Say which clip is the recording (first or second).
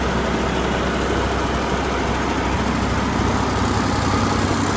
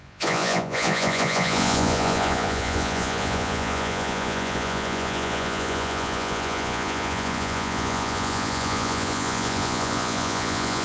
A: first